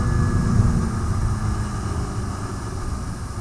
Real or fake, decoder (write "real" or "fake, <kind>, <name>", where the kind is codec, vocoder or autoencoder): real